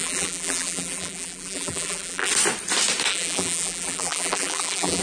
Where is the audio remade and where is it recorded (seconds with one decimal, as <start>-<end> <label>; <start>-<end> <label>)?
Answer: 0.0-2.3 remade; 2.3-3.1 recorded; 3.1-5.0 remade